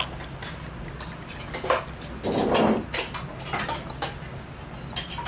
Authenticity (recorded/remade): recorded